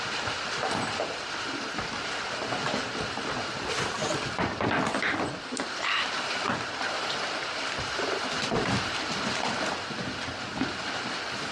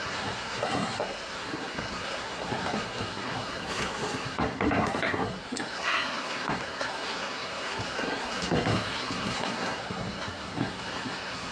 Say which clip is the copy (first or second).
second